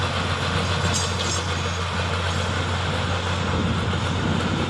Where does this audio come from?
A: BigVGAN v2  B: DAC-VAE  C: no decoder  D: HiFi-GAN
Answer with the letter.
C